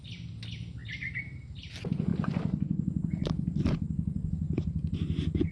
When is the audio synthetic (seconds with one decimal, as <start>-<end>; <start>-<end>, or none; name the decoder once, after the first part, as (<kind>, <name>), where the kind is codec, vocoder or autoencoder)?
2.1-5.5 (vocoder, BigVGAN v2)